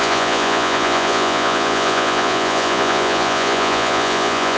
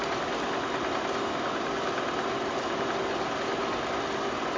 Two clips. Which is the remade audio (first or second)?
first